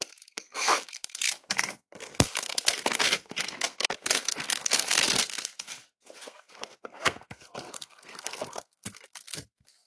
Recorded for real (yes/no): no